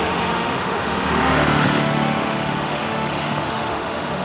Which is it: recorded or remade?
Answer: remade